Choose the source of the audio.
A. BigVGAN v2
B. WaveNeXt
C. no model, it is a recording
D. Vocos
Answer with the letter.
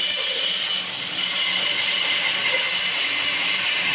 C